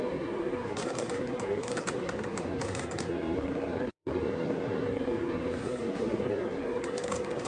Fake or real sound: fake